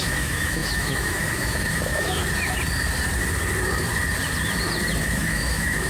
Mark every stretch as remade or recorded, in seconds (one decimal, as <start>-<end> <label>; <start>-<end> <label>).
0.0-2.2 remade; 2.2-5.0 recorded; 5.0-5.9 remade